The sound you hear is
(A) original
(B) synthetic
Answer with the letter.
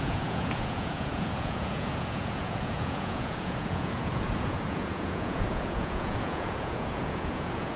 B